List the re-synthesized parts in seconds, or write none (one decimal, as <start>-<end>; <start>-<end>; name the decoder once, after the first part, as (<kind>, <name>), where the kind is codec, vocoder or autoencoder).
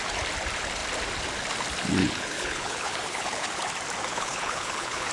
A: 2.0-3.6 (codec, HILCodec); 4.1-5.1